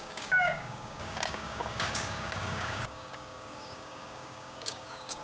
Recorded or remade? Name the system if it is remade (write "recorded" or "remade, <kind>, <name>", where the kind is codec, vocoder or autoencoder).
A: remade, codec, DAC